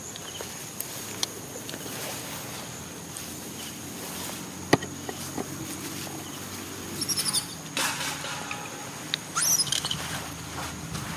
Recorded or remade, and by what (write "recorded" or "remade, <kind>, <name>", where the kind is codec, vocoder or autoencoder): recorded